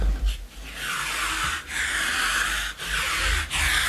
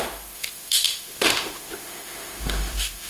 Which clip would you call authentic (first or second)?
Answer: first